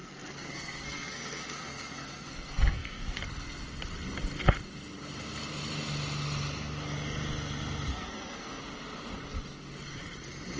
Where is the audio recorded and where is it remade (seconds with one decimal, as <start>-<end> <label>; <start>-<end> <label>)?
0.0-3.2 remade; 3.2-7.9 recorded; 7.9-8.6 remade; 8.6-10.6 recorded